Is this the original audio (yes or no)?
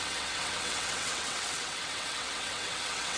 no